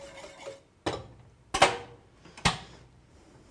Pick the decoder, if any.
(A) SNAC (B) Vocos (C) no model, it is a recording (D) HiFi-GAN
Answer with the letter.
C